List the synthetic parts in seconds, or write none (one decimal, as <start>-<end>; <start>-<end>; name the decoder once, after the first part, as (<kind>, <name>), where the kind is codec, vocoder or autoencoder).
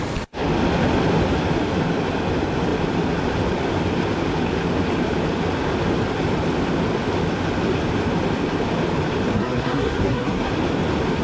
9.3-10.5 (codec, SNAC)